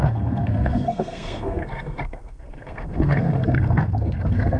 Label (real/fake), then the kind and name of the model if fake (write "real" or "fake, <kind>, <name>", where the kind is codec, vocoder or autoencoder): fake, codec, SNAC